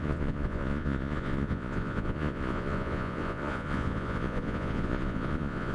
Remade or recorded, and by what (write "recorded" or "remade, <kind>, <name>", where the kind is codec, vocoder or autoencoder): remade, vocoder, Vocos